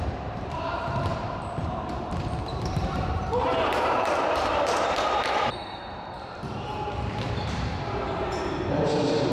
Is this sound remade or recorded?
remade